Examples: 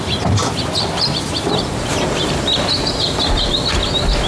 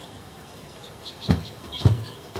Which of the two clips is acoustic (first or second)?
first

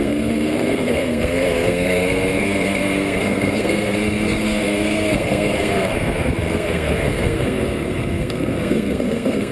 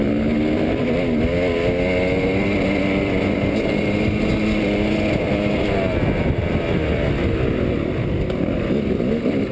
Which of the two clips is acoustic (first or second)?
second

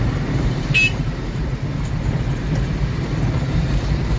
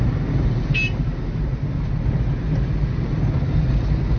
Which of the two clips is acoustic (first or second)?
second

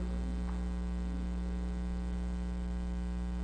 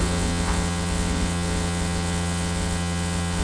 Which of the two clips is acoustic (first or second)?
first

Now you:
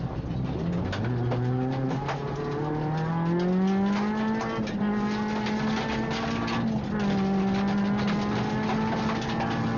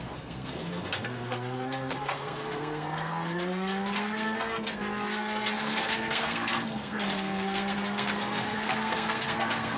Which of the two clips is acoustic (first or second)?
first